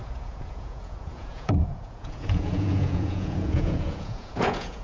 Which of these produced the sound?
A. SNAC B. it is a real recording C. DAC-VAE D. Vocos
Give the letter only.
D